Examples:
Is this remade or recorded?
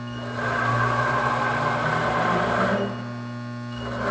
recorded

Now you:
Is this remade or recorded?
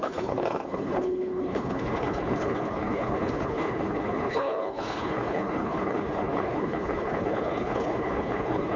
remade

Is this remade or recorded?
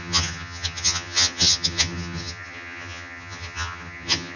remade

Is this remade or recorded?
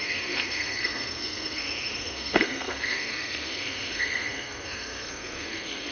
remade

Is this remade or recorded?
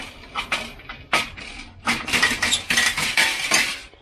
recorded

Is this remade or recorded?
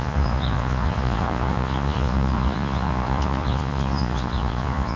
remade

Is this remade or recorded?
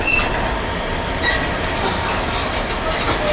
recorded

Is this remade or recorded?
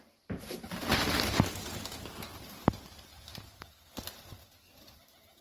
recorded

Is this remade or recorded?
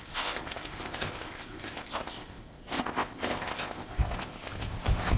remade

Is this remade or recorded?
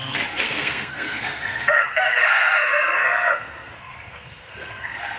remade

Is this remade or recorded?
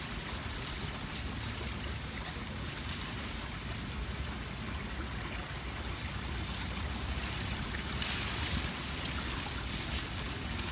recorded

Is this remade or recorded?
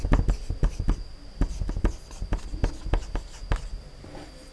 recorded